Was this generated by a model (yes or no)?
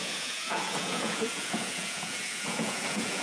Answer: yes